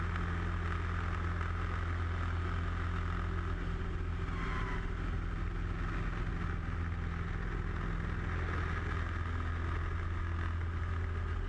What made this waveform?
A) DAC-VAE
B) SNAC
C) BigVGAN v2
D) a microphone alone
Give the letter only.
D